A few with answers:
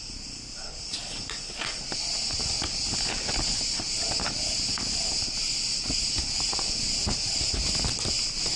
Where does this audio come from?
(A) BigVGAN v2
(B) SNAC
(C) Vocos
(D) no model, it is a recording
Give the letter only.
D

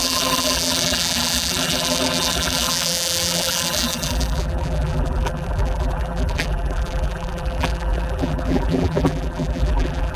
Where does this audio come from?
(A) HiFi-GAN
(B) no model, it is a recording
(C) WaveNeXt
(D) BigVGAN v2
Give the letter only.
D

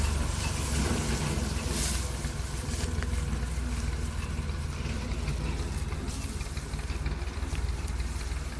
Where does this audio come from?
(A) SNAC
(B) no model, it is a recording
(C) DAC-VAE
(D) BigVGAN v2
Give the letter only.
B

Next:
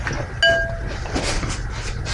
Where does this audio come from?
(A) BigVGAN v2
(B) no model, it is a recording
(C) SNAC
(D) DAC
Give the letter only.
B